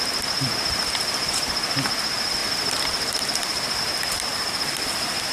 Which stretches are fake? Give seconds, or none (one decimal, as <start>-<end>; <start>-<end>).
2.4-3.8; 4.3-5.3